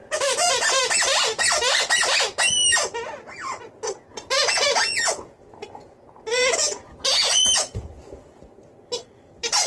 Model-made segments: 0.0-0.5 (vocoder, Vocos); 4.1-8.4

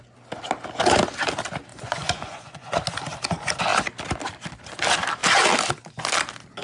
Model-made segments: 1.7-2.8 (vocoder, Vocos)

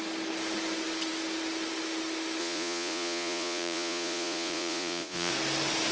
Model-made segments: 2.4-5.3 (vocoder, Vocos)

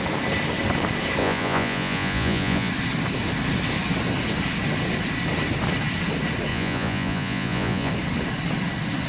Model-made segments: 1.2-2.7 (vocoder, Vocos); 6.5-7.9

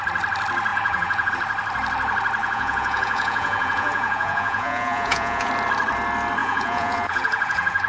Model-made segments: 0.7-1.3 (vocoder, Vocos); 2.4-5.5; 6.4-7.9

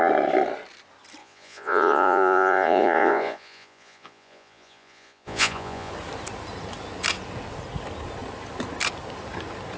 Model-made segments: 1.2-5.9 (vocoder, Vocos)

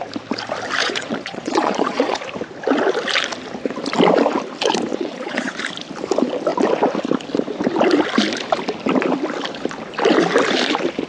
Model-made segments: 0.8-2.2 (vocoder, Vocos); 4.9-5.6

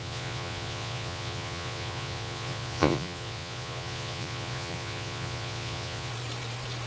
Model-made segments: 0.0-6.1 (vocoder, Vocos)